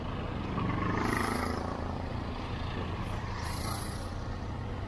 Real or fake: fake